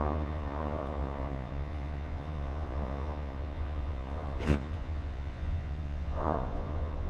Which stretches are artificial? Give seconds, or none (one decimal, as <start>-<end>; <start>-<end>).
0.0-7.1